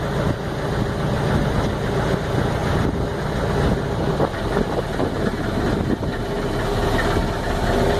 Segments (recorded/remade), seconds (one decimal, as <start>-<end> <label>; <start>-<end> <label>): 0.0-8.0 recorded